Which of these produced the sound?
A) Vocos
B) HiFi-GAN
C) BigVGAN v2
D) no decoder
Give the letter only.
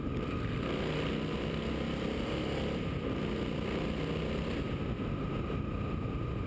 D